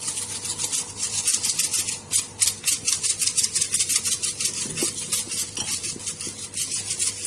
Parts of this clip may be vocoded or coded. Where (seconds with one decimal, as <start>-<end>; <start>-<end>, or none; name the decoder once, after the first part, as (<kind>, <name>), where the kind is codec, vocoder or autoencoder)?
none